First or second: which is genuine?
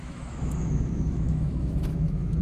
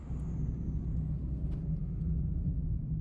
second